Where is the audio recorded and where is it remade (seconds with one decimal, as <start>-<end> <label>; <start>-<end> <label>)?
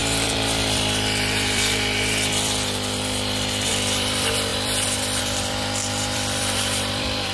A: 0.0-7.3 remade